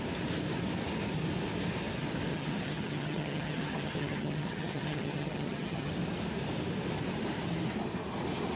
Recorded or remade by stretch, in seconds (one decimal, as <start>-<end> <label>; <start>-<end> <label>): 0.0-2.3 recorded; 2.3-5.9 remade; 5.9-8.6 recorded